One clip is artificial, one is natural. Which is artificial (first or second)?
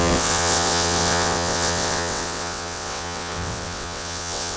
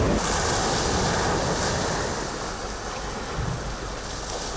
first